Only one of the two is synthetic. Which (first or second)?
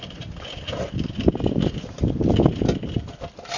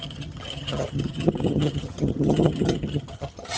second